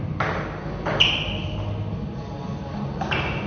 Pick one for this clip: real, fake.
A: real